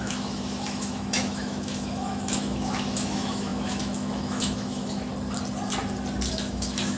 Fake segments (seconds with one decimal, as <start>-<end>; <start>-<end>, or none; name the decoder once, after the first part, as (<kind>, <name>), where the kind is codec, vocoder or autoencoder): 0.0-5.1 (autoencoder, DAC-VAE); 6.3-7.0